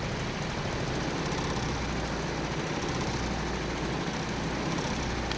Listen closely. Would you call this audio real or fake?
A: real